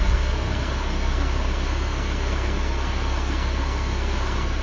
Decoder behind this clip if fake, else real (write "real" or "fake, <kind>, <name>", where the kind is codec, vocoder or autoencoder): fake, codec, SNAC